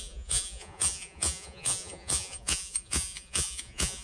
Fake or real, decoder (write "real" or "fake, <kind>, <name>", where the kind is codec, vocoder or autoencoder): fake, vocoder, Vocos